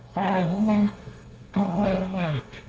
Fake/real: fake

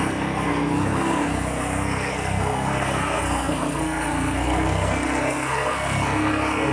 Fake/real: fake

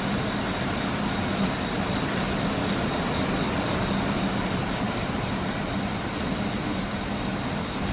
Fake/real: real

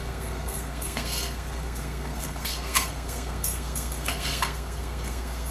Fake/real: fake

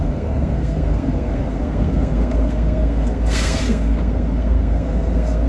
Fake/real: fake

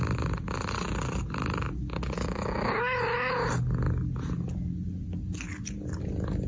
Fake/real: real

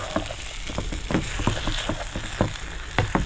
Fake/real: real